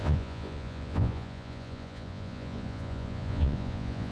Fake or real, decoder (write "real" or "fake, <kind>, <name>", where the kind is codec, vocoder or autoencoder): fake, vocoder, Vocos